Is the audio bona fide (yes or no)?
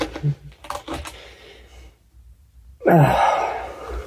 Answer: yes